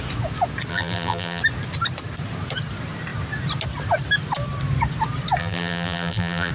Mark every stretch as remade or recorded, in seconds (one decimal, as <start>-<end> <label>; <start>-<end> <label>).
0.0-0.7 recorded; 0.7-1.4 remade; 1.4-5.4 recorded; 5.4-6.5 remade